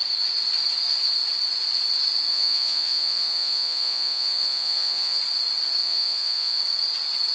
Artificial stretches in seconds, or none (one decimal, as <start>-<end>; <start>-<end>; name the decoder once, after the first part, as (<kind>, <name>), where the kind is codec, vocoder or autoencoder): 2.3-5.2 (vocoder, Vocos); 5.8-6.6